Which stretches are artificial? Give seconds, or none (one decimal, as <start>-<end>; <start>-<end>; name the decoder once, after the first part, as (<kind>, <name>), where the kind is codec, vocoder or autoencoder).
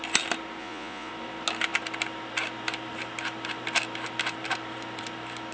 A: 0.6-1.1 (vocoder, Vocos)